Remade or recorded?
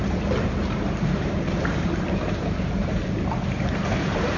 remade